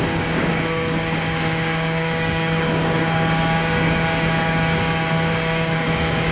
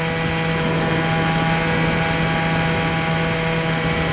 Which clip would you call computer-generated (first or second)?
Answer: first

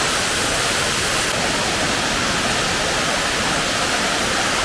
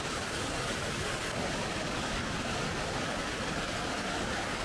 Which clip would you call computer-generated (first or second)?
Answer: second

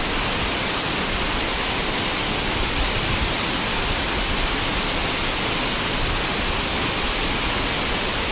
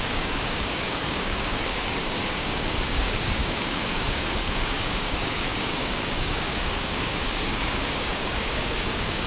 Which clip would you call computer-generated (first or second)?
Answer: second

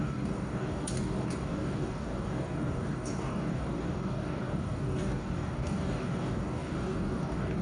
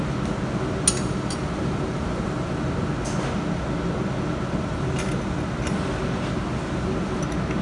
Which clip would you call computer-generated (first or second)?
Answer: first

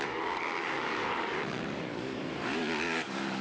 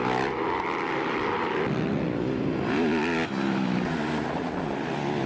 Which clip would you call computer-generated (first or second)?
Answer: first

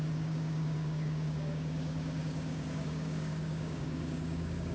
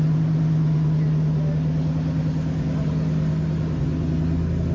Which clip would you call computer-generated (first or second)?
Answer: first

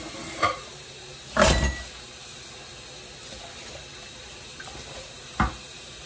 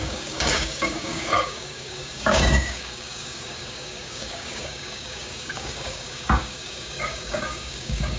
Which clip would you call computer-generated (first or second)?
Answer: second